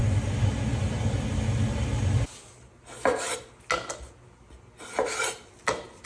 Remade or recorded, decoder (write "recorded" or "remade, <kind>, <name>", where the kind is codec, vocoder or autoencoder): recorded